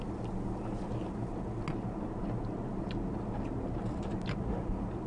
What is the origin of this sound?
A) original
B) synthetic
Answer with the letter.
A